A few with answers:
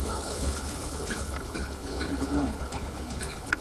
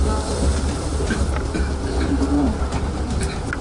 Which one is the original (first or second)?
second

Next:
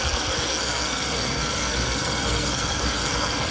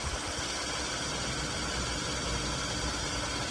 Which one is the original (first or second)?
second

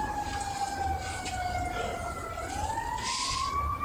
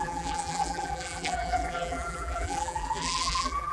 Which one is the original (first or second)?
first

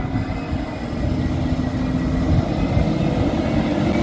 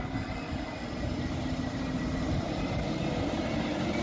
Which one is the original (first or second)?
first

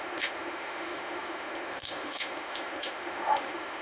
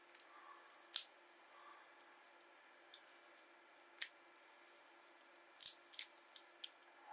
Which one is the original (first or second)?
second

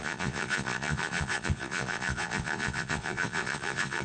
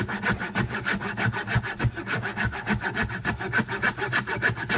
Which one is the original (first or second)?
second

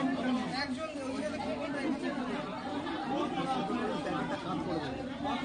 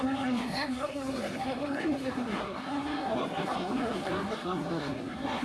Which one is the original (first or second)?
first